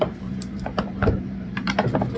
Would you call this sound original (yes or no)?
no